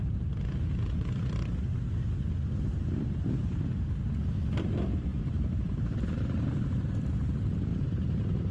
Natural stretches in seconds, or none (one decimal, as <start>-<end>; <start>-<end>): 0.0-5.1; 6.2-7.7